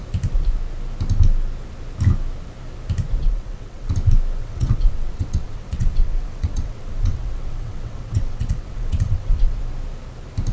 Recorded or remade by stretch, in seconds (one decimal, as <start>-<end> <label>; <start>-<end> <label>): 0.0-3.2 recorded; 3.2-3.9 remade; 3.9-4.4 recorded; 4.4-9.6 remade; 9.6-10.5 recorded